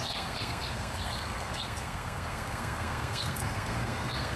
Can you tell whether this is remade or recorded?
remade